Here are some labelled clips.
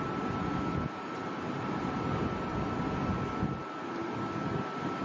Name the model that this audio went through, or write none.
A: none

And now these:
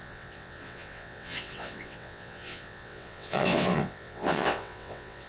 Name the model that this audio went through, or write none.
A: vocoder, WaveNeXt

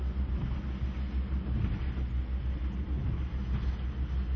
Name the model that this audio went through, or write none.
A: none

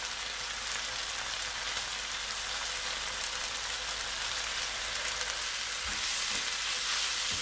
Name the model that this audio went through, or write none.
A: none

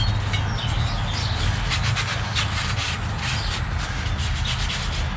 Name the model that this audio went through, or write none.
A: none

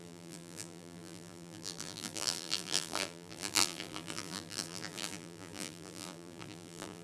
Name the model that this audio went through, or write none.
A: vocoder, BigVGAN v2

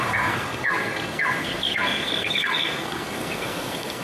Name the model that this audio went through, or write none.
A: codec, SNAC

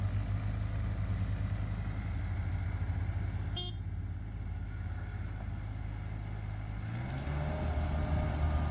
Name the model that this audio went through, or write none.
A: none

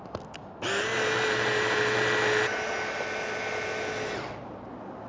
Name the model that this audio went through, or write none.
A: none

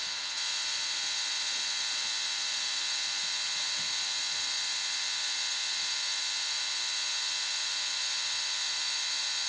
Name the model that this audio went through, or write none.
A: vocoder, Vocos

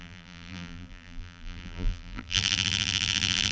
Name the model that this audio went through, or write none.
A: vocoder, BigVGAN v2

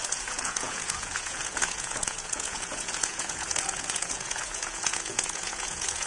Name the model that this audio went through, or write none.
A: vocoder, Vocos